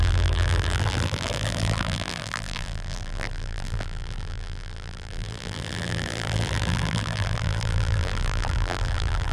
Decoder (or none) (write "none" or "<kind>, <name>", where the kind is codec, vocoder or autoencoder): vocoder, BigVGAN v2